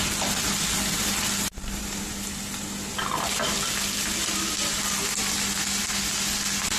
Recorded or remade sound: recorded